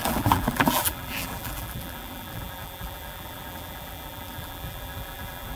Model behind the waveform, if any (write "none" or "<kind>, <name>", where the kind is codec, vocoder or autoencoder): vocoder, BigVGAN v2